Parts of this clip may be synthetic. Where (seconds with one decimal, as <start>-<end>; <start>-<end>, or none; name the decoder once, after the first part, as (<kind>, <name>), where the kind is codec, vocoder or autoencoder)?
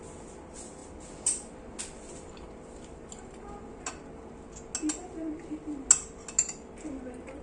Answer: none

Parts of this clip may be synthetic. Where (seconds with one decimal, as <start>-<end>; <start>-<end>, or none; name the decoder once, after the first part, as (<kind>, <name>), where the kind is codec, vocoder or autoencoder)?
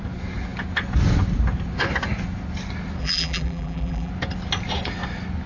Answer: 3.0-4.1 (vocoder, BigVGAN v2)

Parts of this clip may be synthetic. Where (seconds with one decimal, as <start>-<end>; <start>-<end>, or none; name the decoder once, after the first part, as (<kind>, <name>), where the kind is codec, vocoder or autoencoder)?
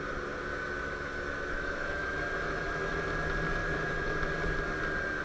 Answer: 0.5-3.0 (autoencoder, DAC-VAE); 3.6-4.2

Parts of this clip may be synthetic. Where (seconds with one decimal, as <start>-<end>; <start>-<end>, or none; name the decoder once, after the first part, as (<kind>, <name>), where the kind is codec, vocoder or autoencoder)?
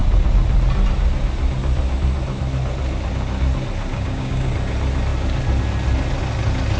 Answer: 3.9-4.5 (codec, DAC)